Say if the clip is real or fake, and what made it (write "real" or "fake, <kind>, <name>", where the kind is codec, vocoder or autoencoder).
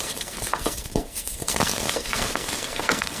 fake, codec, SNAC